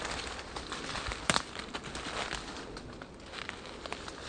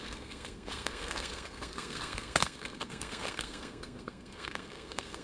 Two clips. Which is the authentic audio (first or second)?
first